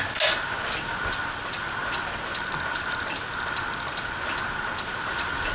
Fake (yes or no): no